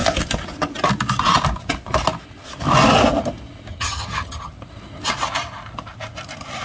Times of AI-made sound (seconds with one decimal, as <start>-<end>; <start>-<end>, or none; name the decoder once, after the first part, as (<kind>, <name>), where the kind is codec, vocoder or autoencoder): 3.7-4.5 (vocoder, HiFi-GAN)